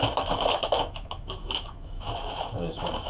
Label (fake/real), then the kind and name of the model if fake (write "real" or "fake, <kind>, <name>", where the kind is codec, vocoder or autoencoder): fake, autoencoder, DAC-VAE